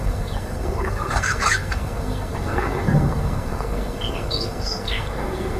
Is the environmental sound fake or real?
fake